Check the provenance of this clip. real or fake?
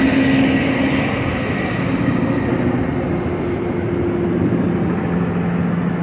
real